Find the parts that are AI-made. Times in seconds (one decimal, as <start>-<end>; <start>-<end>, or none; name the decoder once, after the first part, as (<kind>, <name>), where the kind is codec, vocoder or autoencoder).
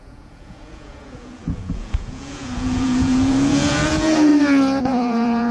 0.0-4.3 (vocoder, Vocos); 4.8-5.5